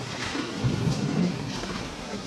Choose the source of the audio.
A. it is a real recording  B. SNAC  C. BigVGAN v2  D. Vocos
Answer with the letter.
B